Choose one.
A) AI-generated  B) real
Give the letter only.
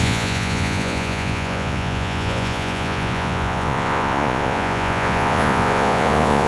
A